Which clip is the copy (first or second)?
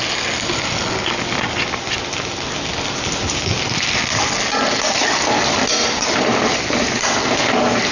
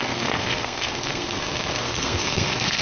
second